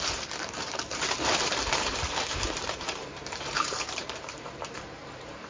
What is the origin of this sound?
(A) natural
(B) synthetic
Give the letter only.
B